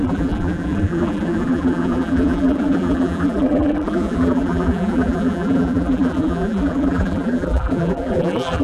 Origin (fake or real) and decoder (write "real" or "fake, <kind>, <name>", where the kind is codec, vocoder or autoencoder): fake, vocoder, BigVGAN v2